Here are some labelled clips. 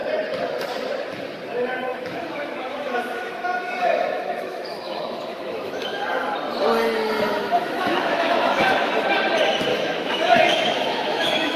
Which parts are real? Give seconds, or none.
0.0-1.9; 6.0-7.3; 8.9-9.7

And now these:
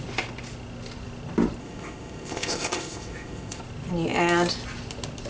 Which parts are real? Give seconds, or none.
0.0-1.6; 3.6-5.3